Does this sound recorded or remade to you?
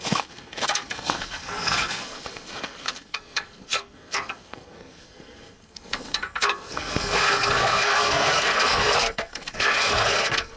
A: remade